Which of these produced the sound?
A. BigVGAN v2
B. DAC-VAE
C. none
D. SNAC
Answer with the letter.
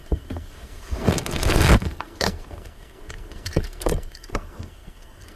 D